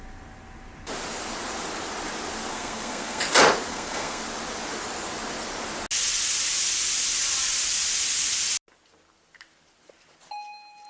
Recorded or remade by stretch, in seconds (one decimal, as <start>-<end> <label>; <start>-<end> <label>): 0.0-2.5 recorded; 2.5-3.2 remade; 3.2-3.7 recorded; 3.7-4.2 remade; 4.2-10.9 recorded